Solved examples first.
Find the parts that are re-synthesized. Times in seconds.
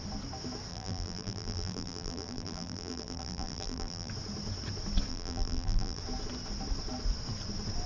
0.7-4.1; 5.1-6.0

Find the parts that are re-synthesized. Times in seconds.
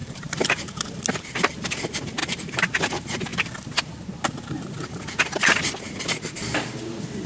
0.0-1.0; 2.2-2.8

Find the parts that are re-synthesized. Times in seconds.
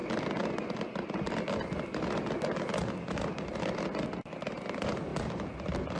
none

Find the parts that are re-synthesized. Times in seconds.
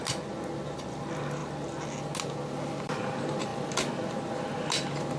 none